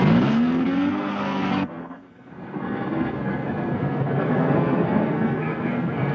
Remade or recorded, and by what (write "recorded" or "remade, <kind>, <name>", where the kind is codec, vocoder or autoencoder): remade, codec, SNAC